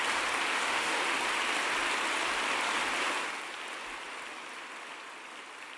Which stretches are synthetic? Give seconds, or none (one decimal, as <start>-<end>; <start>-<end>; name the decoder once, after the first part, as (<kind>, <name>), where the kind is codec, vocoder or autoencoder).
0.5-1.0 (autoencoder, DAC-VAE)